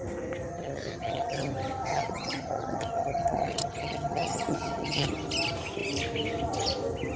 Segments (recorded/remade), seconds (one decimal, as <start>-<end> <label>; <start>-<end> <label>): 0.0-0.5 recorded; 0.5-1.5 remade; 1.5-1.9 recorded; 1.9-5.1 remade; 5.1-7.2 recorded